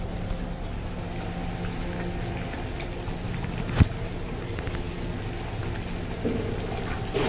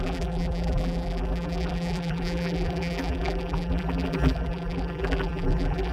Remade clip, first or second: second